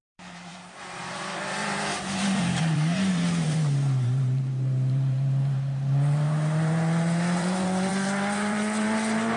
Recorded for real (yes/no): no